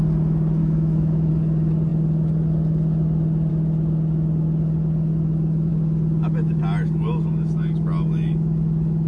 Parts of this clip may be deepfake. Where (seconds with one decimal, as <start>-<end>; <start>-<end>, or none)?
0.6-1.3